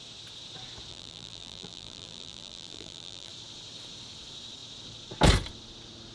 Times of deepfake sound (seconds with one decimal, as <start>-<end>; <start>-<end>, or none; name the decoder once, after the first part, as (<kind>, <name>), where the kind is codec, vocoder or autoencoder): 0.9-3.3 (vocoder, BigVGAN v2)